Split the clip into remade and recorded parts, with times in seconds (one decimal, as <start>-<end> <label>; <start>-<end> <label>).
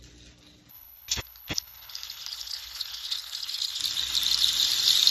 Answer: 0.0-0.7 recorded; 0.7-3.8 remade; 3.8-5.1 recorded